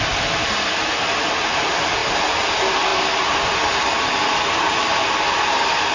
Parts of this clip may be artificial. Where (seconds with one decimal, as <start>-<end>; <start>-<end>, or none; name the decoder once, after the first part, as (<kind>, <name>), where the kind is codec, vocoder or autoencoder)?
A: none